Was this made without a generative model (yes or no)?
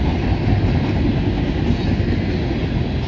yes